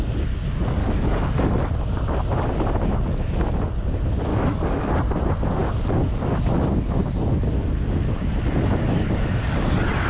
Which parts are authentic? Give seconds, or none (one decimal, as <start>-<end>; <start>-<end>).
0.0-0.8; 1.7-4.3; 4.9-10.1